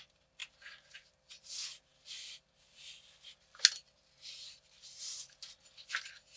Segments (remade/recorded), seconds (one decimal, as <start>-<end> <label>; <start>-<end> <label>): 0.0-6.4 recorded